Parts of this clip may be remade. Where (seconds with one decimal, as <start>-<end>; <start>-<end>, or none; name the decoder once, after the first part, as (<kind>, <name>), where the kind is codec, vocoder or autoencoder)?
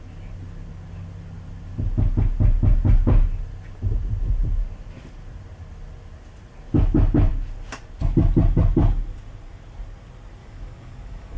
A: 10.4-11.4 (codec, DAC)